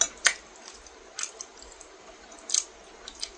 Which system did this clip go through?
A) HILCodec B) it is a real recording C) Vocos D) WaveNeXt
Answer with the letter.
B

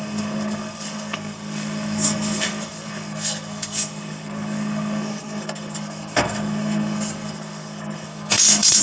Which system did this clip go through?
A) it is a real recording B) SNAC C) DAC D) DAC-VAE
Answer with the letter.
B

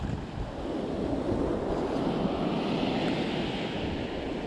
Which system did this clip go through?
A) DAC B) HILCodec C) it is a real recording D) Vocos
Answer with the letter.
C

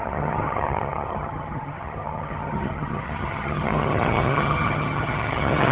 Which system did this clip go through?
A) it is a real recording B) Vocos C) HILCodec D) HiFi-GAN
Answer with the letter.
D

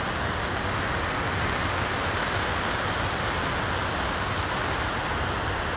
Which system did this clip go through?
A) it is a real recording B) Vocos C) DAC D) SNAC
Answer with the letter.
A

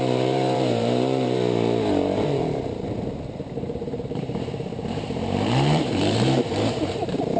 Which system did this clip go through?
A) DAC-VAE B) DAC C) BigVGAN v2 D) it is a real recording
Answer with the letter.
C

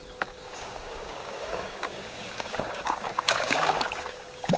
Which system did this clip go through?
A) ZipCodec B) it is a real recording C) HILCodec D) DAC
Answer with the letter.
D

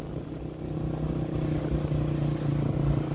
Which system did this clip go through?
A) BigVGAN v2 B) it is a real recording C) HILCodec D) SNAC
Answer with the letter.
B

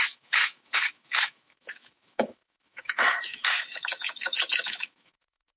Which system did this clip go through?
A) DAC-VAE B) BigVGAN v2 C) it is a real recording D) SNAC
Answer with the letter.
A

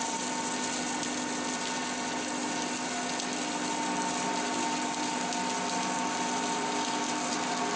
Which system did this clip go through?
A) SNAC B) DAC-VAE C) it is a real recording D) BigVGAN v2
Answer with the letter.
C